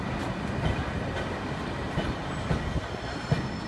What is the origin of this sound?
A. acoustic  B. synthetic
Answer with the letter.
A